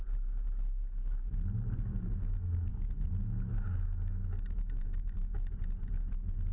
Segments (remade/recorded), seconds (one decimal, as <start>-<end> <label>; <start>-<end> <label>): 0.0-1.9 recorded; 1.9-2.7 remade; 2.7-3.5 recorded; 3.5-5.5 remade; 5.5-6.5 recorded